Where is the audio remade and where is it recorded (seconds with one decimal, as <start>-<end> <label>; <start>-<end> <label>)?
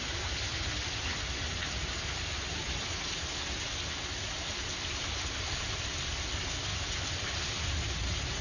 0.0-8.4 recorded